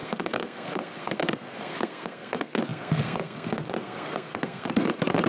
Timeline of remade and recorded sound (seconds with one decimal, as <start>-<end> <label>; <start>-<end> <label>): 0.0-5.3 remade